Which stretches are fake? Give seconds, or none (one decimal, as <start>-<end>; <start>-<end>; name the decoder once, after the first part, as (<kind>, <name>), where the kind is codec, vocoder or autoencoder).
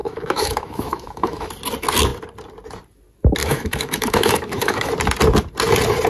0.0-1.5 (autoencoder, DAC-VAE); 3.4-4.9